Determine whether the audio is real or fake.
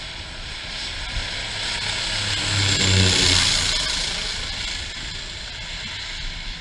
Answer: real